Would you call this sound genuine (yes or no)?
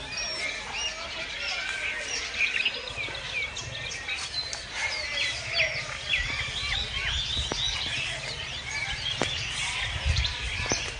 yes